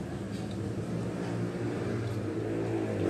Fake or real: real